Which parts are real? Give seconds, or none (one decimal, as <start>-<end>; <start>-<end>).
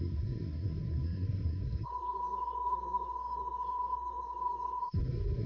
none